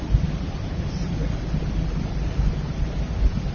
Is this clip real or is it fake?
real